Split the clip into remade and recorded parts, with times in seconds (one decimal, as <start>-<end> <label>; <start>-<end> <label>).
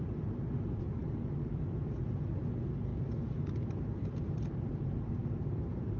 0.0-2.9 recorded; 2.9-5.3 remade; 5.3-6.0 recorded